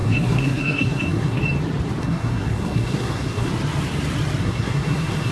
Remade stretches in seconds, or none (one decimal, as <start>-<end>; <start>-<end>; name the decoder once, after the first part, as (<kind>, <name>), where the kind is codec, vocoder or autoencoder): 0.0-1.4 (codec, SNAC); 2.0-3.5; 4.4-5.3